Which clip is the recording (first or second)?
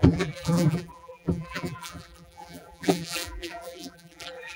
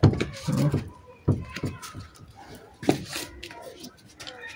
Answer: second